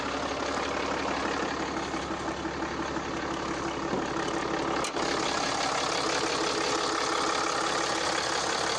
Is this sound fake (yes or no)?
no